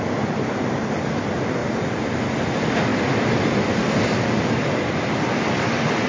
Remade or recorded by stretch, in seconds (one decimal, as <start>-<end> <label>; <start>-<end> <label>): 0.0-6.1 recorded